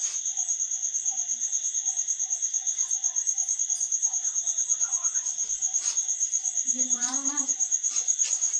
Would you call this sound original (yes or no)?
no